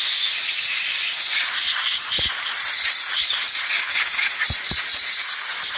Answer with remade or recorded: recorded